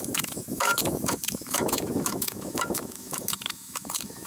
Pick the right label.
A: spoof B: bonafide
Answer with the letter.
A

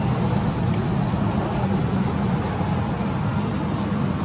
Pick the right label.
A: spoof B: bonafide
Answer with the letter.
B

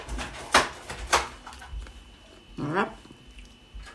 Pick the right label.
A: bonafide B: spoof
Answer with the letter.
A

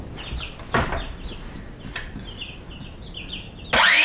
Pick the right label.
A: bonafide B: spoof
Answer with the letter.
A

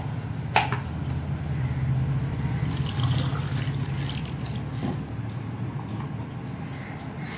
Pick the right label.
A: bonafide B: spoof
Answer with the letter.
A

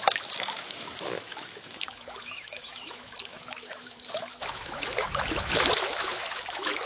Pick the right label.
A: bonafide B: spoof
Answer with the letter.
B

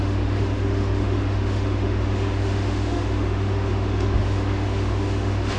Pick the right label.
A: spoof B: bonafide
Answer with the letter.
A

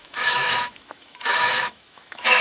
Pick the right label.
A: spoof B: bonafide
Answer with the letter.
A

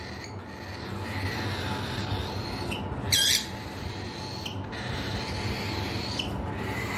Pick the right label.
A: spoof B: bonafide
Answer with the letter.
B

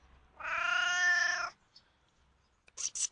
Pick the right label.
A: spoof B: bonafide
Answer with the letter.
B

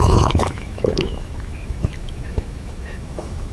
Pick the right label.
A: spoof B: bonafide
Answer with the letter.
A